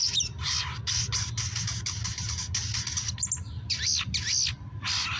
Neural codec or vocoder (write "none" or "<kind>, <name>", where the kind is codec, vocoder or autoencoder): none